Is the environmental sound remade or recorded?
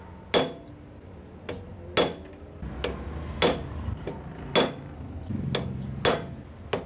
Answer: recorded